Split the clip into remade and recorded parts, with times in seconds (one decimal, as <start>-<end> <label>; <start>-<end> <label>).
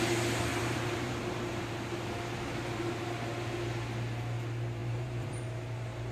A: 0.0-0.5 recorded; 0.5-1.7 remade; 1.7-4.8 recorded; 4.8-5.4 remade; 5.4-6.1 recorded